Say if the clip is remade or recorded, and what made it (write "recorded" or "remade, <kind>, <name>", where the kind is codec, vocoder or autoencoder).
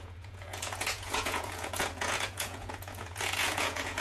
remade, vocoder, Vocos